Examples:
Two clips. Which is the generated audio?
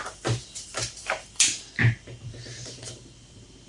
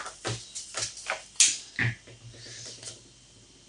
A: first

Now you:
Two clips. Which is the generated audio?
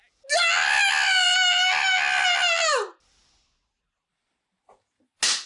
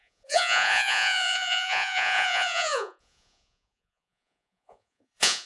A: second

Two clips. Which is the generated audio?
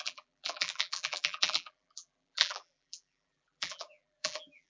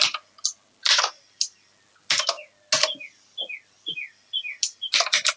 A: first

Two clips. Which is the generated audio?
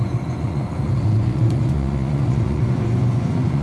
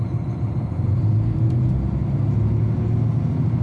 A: first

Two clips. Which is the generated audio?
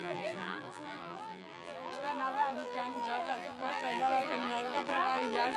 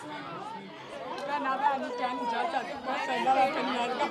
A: first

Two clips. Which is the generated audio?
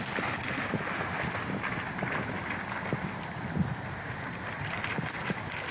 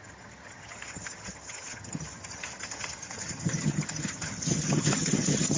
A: second